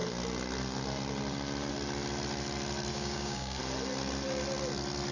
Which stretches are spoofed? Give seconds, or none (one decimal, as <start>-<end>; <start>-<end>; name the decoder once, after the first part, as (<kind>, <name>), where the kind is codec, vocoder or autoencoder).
2.9-3.6 (codec, DAC)